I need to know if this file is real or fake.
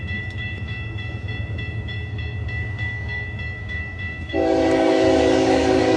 fake